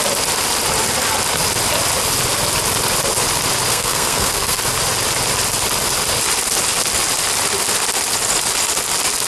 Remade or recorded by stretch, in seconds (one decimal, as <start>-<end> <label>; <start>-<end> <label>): 0.0-3.7 recorded; 3.7-4.6 remade; 4.6-9.3 recorded